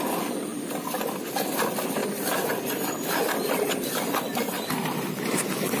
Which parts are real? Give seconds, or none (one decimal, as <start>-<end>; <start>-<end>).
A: 0.0-5.8

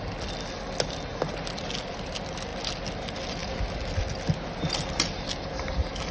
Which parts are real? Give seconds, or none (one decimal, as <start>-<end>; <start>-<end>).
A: 0.0-6.1

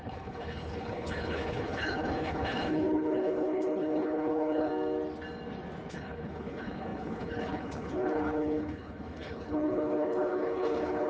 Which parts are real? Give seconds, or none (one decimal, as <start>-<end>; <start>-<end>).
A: 4.7-5.9

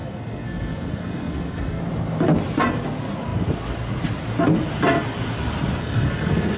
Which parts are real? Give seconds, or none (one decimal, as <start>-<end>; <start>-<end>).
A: 1.8-5.8